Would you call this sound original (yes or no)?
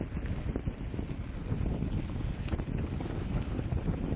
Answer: yes